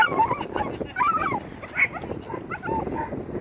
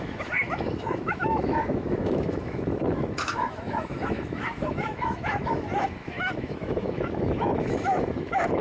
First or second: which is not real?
second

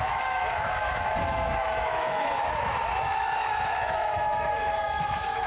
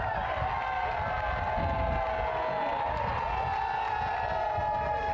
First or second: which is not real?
first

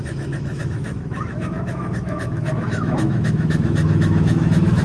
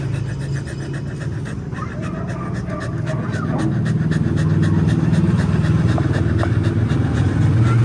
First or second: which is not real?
first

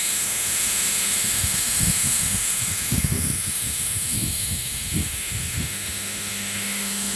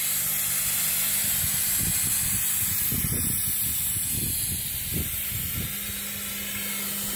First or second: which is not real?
first